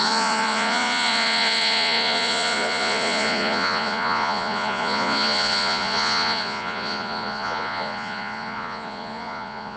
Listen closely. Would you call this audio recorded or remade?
remade